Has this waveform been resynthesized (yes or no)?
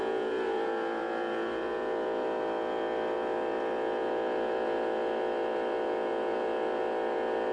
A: yes